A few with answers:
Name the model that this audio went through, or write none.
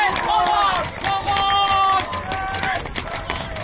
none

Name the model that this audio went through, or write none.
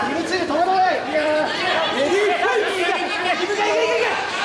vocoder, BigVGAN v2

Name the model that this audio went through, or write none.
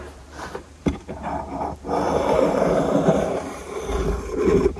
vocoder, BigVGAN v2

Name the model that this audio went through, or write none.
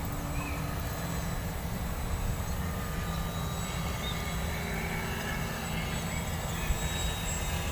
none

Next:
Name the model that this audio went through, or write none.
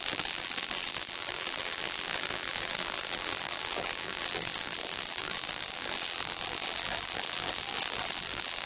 vocoder, BigVGAN v2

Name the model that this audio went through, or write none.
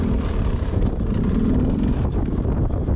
none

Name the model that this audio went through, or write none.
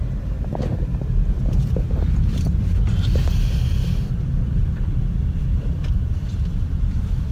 vocoder, BigVGAN v2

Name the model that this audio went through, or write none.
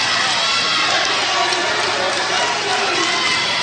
none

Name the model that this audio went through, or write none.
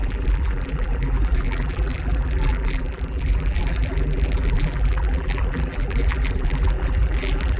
vocoder, BigVGAN v2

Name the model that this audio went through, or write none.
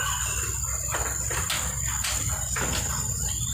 none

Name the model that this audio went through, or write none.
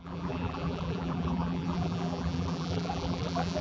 vocoder, BigVGAN v2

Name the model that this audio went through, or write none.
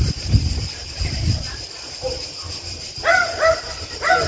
none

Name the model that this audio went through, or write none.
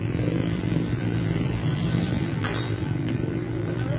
vocoder, BigVGAN v2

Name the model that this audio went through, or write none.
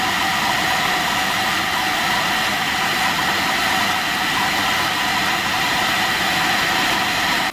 none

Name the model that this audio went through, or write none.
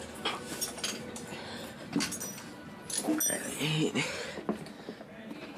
none